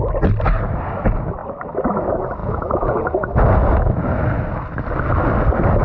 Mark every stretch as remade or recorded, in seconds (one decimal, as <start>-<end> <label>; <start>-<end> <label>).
0.0-2.4 recorded; 2.4-3.0 remade; 3.0-5.8 recorded